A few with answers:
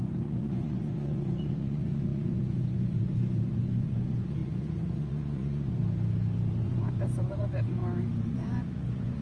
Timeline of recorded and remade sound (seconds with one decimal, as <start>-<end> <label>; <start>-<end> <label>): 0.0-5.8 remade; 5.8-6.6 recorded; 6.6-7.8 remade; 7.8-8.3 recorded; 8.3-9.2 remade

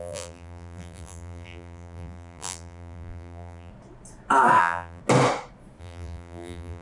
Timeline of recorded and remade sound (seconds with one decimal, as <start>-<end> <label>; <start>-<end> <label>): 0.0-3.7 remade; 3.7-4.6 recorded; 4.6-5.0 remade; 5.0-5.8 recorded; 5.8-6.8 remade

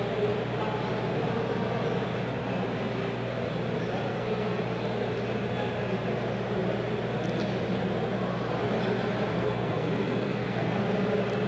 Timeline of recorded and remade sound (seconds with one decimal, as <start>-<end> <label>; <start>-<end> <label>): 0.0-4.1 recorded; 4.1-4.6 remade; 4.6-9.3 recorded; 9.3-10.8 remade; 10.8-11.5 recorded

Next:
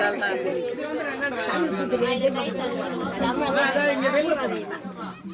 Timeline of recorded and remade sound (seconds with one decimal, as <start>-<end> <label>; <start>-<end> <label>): 0.0-5.3 recorded